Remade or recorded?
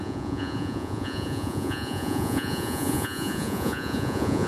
remade